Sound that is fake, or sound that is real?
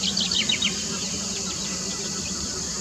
fake